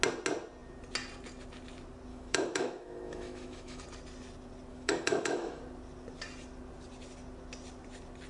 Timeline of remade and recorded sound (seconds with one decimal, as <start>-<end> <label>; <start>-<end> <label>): 0.0-2.1 recorded; 2.1-3.8 remade; 3.8-4.7 recorded; 4.7-5.6 remade; 5.6-8.3 recorded